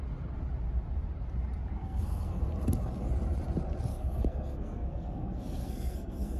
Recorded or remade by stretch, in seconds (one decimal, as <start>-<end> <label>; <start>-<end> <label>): 0.0-1.7 recorded; 1.7-2.4 remade; 2.4-3.9 recorded; 3.9-6.4 remade